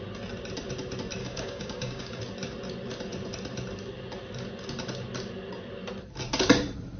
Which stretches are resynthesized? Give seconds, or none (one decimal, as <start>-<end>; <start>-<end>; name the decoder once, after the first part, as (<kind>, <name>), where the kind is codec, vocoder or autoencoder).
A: 1.2-2.2 (codec, DAC)